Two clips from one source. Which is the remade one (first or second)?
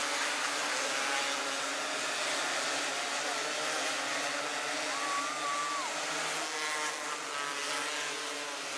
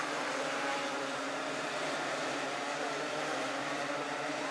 second